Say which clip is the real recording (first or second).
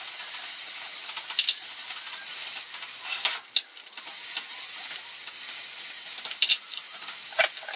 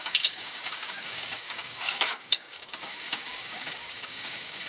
first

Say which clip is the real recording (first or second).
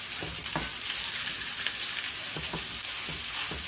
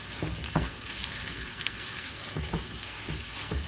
first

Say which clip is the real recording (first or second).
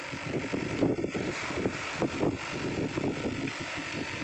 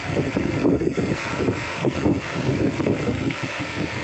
first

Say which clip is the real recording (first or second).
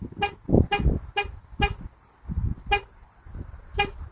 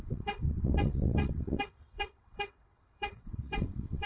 first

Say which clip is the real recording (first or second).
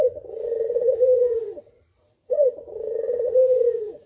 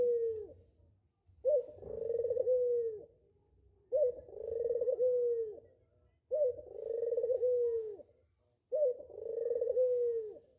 second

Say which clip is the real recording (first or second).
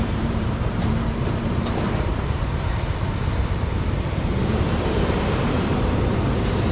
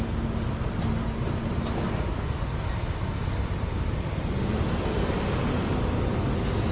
second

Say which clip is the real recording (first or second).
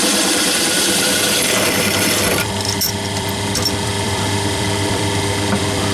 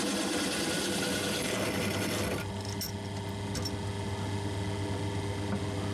second